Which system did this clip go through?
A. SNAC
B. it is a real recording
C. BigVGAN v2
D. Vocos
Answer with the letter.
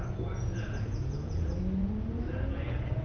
D